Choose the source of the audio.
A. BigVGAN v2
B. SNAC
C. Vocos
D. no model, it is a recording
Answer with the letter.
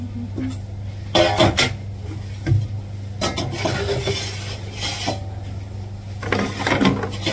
D